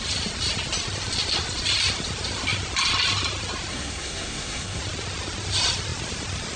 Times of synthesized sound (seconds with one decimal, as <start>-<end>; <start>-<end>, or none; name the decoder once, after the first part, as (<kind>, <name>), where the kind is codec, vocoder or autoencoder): 3.7-4.8 (codec, SNAC)